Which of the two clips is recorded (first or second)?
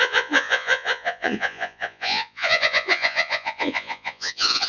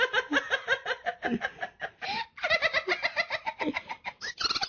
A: second